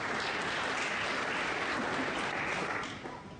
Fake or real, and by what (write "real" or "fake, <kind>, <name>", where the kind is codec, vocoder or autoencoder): real